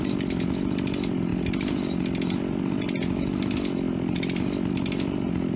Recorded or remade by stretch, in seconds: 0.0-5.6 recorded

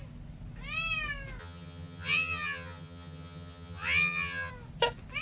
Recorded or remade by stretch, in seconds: 0.0-1.4 recorded; 1.4-4.5 remade; 4.5-5.2 recorded

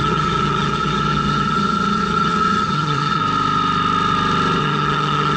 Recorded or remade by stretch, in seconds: 0.0-3.2 remade; 3.2-4.6 recorded; 4.6-5.4 remade

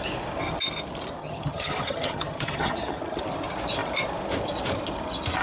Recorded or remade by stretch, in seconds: 0.0-1.2 recorded; 1.2-3.2 remade; 3.2-5.4 recorded

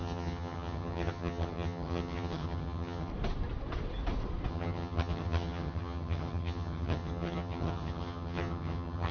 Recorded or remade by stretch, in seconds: 0.0-3.1 remade; 3.1-4.5 recorded; 4.5-9.1 remade

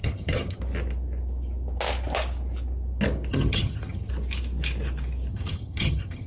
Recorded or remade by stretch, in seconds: 0.0-0.6 remade; 0.6-3.3 recorded; 3.3-4.1 remade; 4.1-5.3 recorded; 5.3-6.3 remade

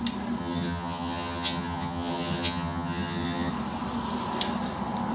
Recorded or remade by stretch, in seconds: 0.0-0.4 recorded; 0.4-3.5 remade; 3.5-5.1 recorded

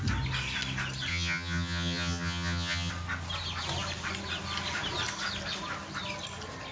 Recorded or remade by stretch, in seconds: 0.0-1.1 recorded; 1.1-2.9 remade; 2.9-6.7 recorded